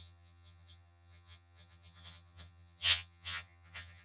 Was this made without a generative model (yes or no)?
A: no